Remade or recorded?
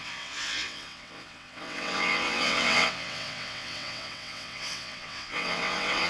remade